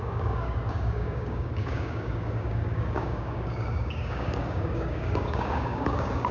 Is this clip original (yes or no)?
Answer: no